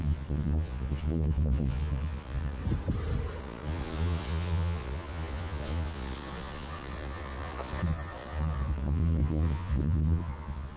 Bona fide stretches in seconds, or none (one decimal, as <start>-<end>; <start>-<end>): 2.6-3.4